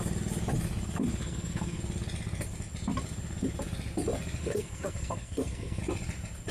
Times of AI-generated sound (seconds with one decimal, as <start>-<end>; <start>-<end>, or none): 1.2-1.8; 4.4-5.8